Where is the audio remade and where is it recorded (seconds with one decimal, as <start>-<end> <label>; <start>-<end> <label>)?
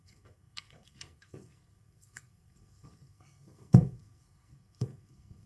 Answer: 0.0-5.5 remade